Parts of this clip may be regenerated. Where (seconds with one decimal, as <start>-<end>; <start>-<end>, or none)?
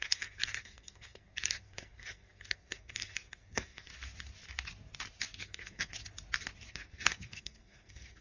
0.0-3.9; 5.4-5.9; 6.7-8.2